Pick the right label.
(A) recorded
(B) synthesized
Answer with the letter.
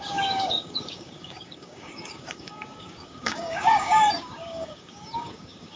B